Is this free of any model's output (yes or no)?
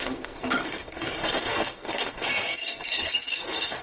no